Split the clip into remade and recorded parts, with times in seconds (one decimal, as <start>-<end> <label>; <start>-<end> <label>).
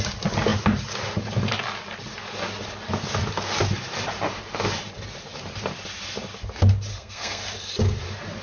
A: 0.0-6.9 recorded; 6.9-7.4 remade; 7.4-8.4 recorded